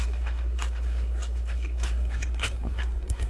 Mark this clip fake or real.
fake